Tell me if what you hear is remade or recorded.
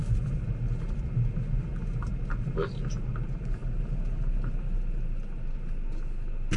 recorded